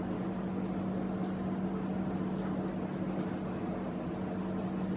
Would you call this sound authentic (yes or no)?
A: yes